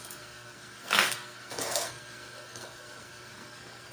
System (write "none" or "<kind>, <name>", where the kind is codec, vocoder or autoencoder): codec, SNAC